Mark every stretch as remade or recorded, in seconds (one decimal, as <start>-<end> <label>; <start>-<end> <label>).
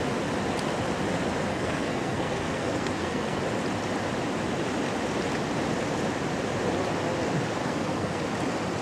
0.0-1.5 recorded; 1.5-3.4 remade; 3.4-7.6 recorded; 7.6-8.2 remade; 8.2-8.8 recorded